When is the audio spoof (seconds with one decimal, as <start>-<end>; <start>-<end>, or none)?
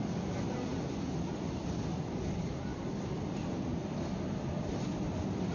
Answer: none